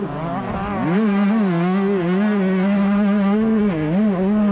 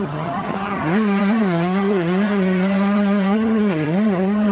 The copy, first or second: second